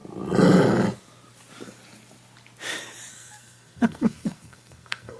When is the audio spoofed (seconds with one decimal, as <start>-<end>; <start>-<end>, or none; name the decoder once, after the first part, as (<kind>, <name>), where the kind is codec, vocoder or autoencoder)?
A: 3.1-5.2 (codec, SNAC)